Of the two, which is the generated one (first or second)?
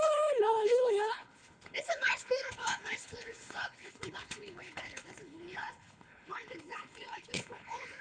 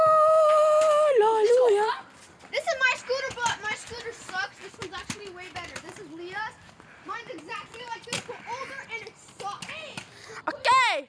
first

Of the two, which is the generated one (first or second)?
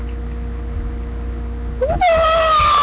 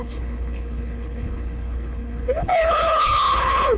second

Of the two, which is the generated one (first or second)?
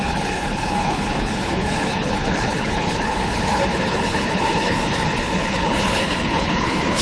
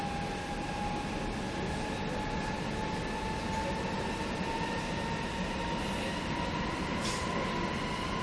first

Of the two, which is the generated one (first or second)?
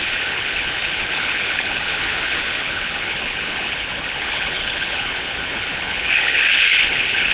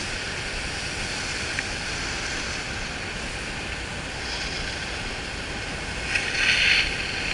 first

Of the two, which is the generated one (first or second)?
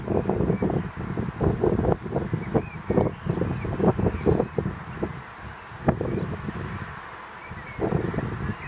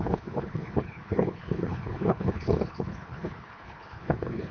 second